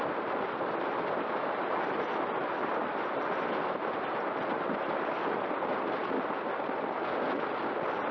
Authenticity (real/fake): real